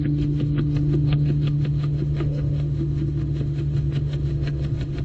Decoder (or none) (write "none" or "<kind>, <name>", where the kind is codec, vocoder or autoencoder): autoencoder, DAC-VAE